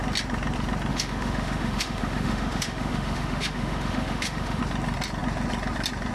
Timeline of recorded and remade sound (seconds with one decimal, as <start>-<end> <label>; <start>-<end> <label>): 0.0-0.9 recorded; 0.9-4.6 remade; 4.6-6.1 recorded